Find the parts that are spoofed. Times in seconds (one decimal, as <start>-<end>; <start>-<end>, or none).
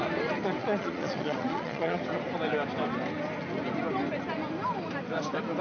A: 0.6-2.0